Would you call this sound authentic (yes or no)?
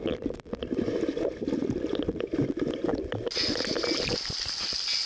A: yes